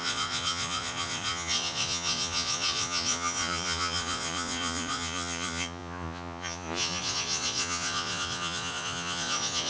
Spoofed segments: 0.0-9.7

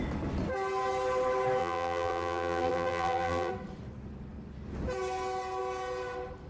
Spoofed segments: 1.6-3.5

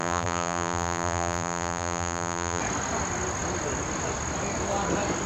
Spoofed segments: 0.0-2.6